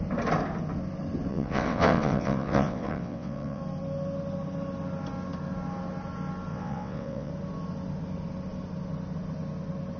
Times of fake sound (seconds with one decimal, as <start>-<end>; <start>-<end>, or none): 1.3-3.6; 6.5-7.3